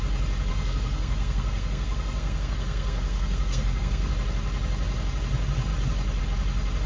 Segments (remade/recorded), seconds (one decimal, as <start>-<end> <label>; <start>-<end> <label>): 0.0-0.5 recorded; 0.5-4.1 remade; 4.1-6.9 recorded